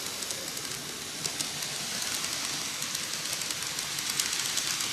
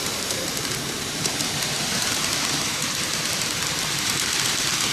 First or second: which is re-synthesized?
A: second